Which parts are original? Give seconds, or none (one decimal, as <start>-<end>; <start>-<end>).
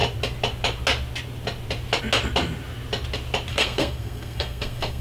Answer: 0.0-3.5